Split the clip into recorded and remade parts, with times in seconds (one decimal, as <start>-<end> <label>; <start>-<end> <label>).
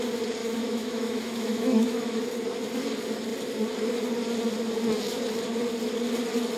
0.0-0.4 recorded; 0.4-2.2 remade; 2.2-6.6 recorded